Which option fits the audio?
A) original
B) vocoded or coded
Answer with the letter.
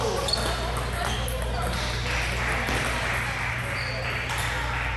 A